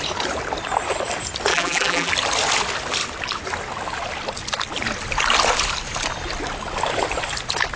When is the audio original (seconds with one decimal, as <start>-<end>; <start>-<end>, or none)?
0.0-1.5; 2.1-7.8